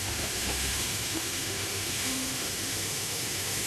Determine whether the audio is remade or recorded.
remade